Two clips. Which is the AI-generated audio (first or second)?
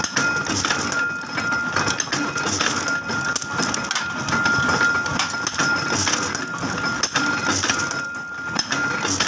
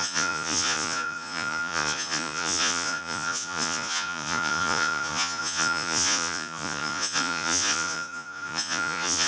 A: second